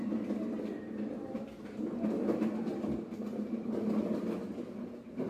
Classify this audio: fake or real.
real